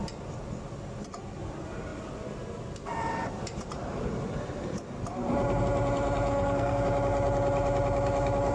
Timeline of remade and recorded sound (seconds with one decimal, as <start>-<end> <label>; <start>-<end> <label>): 0.0-6.3 recorded; 6.3-6.8 remade; 6.8-8.5 recorded